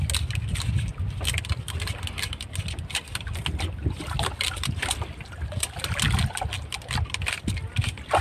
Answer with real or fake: real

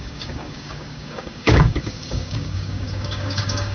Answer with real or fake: fake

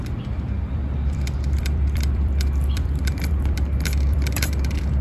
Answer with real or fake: fake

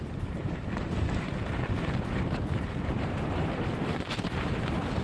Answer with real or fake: fake